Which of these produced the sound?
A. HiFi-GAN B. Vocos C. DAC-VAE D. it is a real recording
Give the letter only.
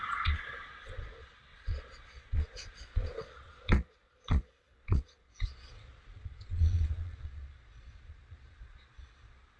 B